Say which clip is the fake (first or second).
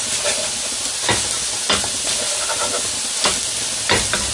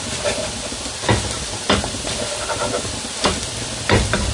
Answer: second